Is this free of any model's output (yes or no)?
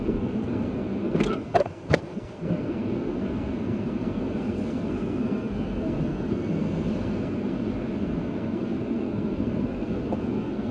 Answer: no